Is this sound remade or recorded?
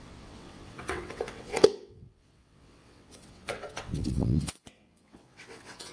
remade